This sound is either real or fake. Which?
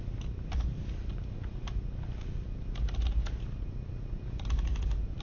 real